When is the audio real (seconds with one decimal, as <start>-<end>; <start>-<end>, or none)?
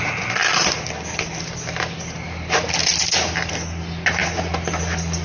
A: 0.0-0.4; 3.5-5.2